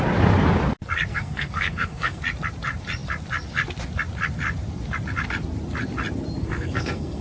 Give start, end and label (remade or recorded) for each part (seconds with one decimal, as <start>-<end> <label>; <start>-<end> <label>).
0.0-1.1 recorded; 1.1-2.2 remade; 2.2-6.4 recorded; 6.4-7.2 remade